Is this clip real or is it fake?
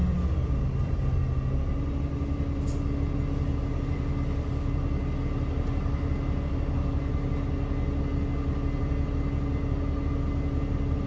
real